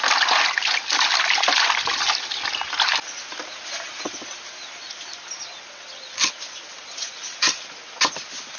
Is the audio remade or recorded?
recorded